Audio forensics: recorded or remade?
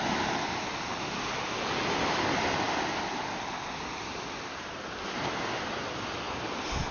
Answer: recorded